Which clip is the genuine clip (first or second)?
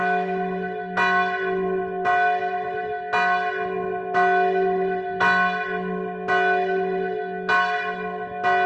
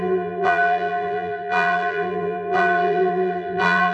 first